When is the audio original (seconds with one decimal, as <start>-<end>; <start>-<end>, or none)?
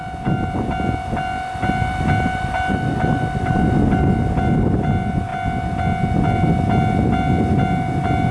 0.0-8.3